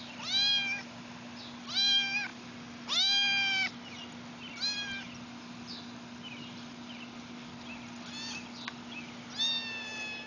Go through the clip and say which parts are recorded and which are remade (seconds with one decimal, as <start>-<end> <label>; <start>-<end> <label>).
0.0-10.3 recorded